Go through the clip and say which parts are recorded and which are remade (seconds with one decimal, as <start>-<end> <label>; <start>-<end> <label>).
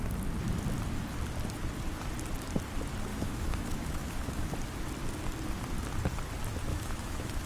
0.0-3.1 recorded; 3.1-4.5 remade; 4.5-6.7 recorded; 6.7-7.5 remade